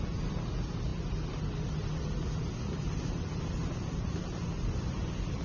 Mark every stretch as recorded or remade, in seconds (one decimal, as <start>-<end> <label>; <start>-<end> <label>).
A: 0.0-4.2 recorded; 4.2-5.0 remade; 5.0-5.4 recorded